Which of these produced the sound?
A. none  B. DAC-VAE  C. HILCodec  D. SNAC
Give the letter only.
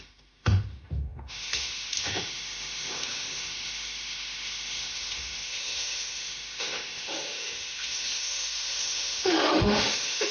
B